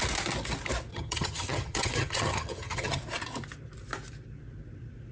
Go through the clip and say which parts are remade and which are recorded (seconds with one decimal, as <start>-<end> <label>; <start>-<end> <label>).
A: 0.0-0.9 recorded; 0.9-3.0 remade; 3.0-5.1 recorded